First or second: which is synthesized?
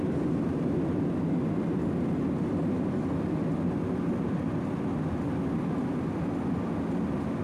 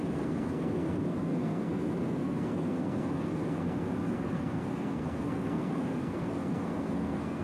second